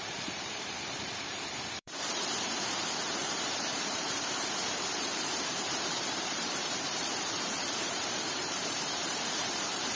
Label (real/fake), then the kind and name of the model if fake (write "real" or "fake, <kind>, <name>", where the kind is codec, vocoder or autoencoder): fake, vocoder, BigVGAN v2